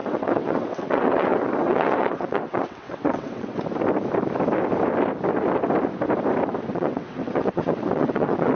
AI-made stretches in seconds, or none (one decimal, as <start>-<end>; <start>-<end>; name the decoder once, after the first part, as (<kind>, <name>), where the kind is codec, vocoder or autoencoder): 0.0-3.6 (vocoder, WaveNeXt); 6.7-8.5